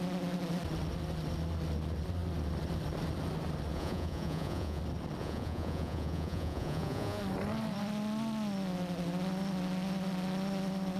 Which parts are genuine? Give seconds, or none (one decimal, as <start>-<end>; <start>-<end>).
0.0-3.7; 4.8-5.2; 7.2-11.0